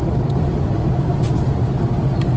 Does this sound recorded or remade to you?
recorded